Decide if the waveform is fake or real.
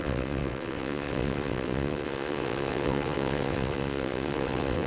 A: fake